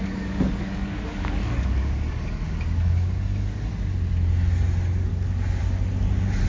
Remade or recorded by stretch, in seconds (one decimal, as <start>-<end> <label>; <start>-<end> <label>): 0.0-3.7 remade; 3.7-5.1 recorded; 5.1-5.6 remade; 5.6-6.5 recorded